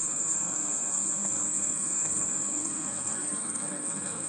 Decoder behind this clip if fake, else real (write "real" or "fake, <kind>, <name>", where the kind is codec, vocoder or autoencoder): fake, codec, SNAC